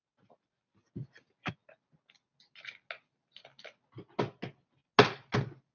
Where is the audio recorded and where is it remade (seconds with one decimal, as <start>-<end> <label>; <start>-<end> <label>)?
0.0-5.7 recorded